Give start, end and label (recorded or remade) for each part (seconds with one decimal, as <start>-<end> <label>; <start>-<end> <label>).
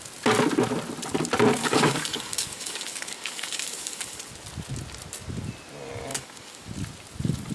0.0-1.6 recorded; 1.6-4.3 remade; 4.3-6.1 recorded; 6.1-6.7 remade; 6.7-7.5 recorded